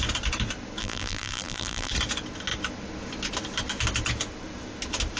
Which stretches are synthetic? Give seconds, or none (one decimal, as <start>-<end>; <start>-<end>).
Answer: 0.8-1.9